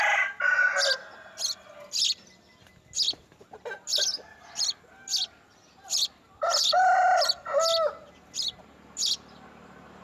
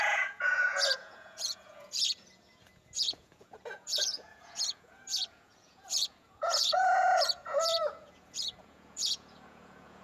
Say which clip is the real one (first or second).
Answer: first